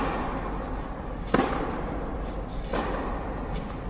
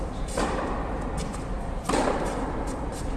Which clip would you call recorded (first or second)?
first